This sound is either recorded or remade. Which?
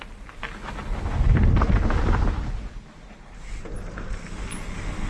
recorded